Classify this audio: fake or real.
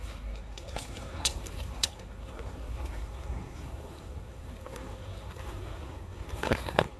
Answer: fake